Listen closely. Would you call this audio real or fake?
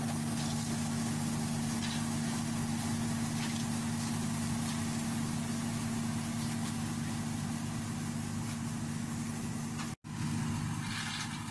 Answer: real